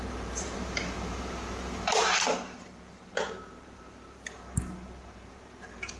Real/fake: fake